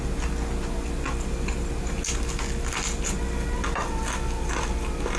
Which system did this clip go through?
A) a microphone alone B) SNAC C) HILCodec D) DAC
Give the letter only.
A